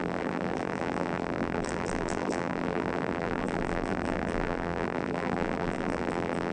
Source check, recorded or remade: remade